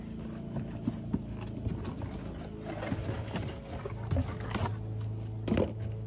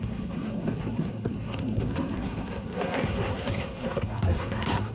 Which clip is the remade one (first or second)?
second